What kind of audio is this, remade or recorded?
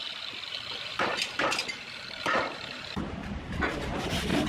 recorded